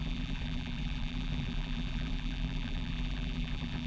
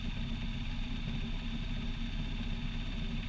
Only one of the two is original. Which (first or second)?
second